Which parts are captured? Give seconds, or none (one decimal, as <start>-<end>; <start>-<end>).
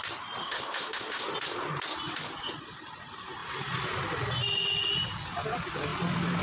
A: 0.0-0.4; 1.3-6.4